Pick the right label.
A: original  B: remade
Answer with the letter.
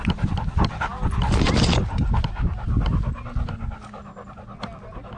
A